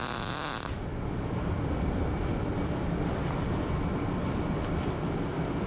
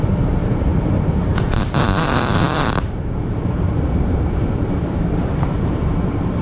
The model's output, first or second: second